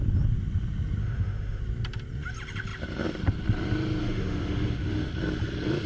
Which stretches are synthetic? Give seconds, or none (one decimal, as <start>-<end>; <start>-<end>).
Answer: 1.0-1.6; 4.0-5.1